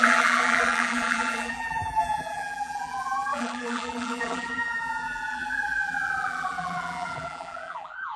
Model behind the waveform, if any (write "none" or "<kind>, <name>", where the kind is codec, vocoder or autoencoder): vocoder, BigVGAN v2